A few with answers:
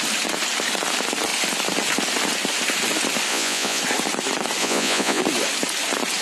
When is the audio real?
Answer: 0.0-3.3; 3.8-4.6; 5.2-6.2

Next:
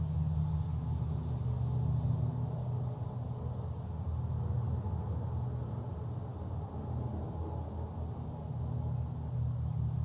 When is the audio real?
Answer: 0.0-10.0

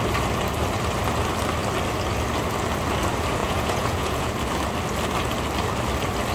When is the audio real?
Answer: 0.0-3.4; 4.3-6.3

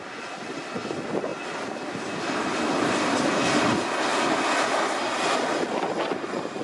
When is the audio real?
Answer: 0.0-6.6

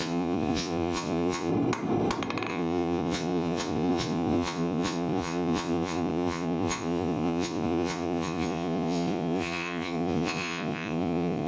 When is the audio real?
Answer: 1.5-2.5

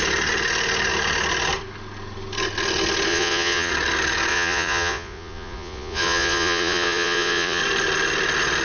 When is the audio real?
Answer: 0.0-3.1; 3.7-4.3; 7.6-8.6